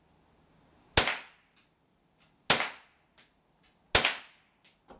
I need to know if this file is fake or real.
real